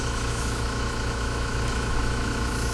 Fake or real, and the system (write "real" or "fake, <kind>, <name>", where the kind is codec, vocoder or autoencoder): fake, autoencoder, DAC-VAE